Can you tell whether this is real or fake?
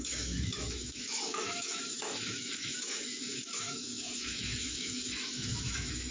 fake